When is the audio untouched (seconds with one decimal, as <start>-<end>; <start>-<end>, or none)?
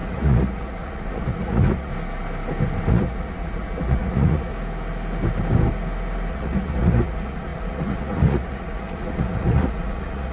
1.9-2.9; 4.5-6.3